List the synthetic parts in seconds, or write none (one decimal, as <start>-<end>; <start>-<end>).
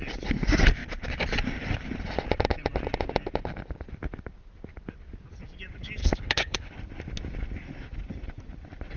6.0-6.7